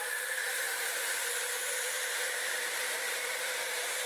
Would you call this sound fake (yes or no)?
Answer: no